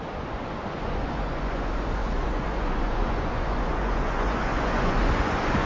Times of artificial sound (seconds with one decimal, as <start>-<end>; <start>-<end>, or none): 0.0-5.7